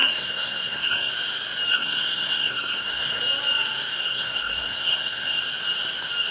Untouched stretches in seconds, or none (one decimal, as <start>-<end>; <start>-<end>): 1.1-1.7; 3.2-3.9; 5.4-6.3